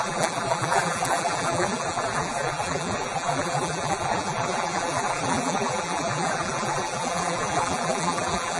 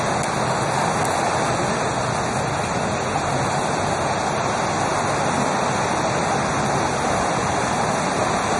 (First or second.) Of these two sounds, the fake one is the first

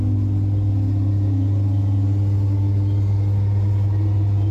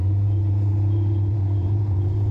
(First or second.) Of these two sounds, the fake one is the second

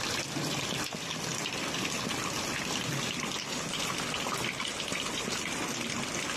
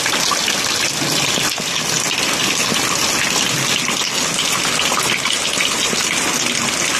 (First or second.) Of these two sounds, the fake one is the first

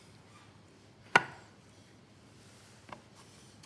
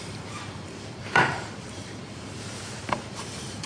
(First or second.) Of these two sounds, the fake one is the second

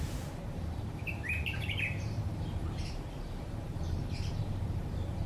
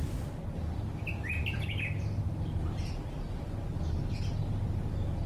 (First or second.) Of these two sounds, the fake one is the first